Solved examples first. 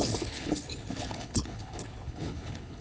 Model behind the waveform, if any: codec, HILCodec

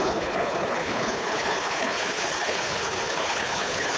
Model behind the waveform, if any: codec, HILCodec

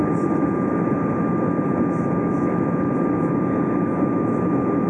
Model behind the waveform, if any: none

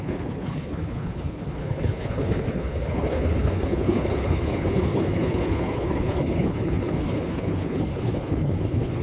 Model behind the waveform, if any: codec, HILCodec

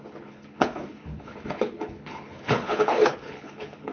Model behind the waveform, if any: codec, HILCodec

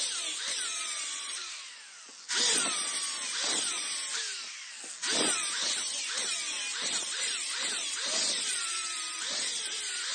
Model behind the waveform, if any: none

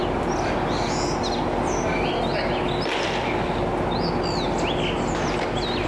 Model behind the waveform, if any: none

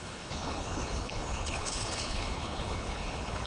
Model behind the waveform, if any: codec, HILCodec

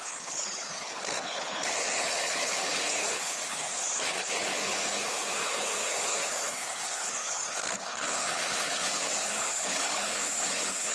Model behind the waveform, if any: codec, HILCodec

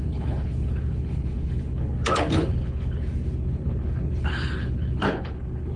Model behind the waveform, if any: codec, HILCodec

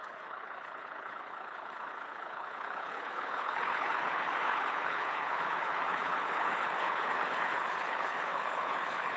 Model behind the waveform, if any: codec, HILCodec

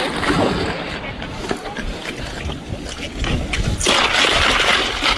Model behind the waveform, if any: none